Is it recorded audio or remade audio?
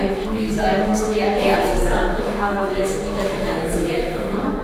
remade